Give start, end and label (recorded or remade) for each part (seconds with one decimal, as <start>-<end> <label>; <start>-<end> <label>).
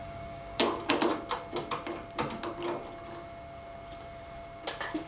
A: 0.0-0.6 remade; 0.6-5.1 recorded